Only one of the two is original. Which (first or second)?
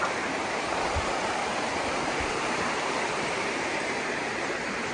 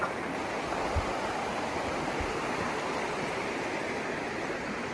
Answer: second